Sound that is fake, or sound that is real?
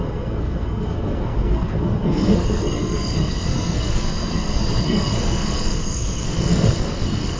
fake